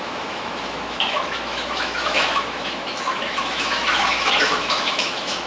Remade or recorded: remade